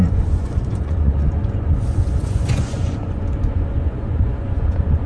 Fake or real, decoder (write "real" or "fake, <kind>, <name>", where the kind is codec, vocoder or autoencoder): fake, vocoder, Vocos